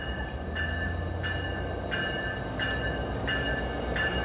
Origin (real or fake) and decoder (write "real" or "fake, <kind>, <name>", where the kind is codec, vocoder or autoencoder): real